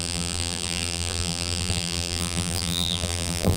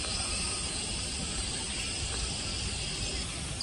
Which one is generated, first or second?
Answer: first